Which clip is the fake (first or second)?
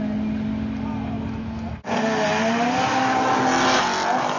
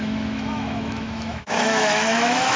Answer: second